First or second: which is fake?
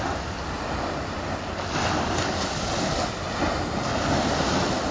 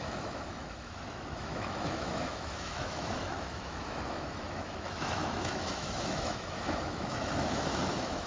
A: second